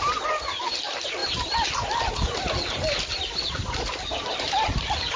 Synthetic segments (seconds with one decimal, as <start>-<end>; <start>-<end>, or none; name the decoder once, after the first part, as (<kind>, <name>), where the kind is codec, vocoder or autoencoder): none